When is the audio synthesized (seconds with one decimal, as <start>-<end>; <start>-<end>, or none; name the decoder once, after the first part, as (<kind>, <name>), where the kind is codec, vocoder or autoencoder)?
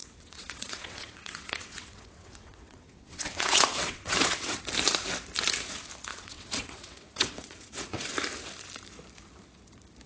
0.0-4.6 (vocoder, WaveNeXt); 6.1-8.1